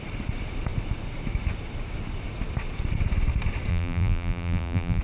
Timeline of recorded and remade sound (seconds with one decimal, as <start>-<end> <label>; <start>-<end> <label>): 0.0-3.7 recorded; 3.7-5.0 remade